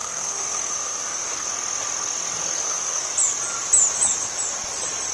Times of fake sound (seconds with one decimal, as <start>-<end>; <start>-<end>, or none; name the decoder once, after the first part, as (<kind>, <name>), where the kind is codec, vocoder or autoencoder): 0.0-1.5 (codec, SNAC); 2.6-3.1